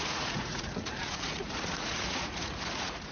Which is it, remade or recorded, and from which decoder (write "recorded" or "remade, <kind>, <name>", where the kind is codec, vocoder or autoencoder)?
remade, vocoder, Vocos